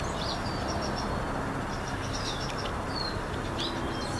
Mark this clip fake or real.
real